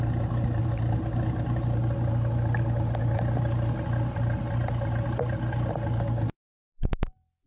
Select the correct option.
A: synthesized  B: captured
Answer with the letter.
B